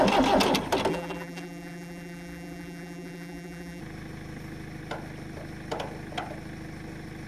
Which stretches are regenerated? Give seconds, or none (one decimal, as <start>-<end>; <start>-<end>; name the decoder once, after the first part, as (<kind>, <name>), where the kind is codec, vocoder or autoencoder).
0.9-3.8 (vocoder, BigVGAN v2)